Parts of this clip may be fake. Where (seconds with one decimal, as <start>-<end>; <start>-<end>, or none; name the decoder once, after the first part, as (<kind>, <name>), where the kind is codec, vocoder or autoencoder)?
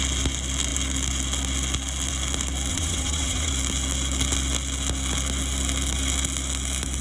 2.7-3.5 (vocoder, WaveNeXt)